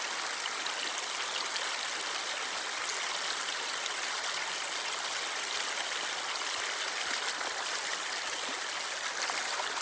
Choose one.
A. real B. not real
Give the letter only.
A